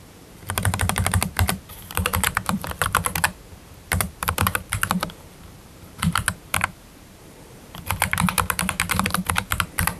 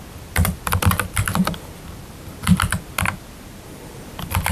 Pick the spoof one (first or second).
first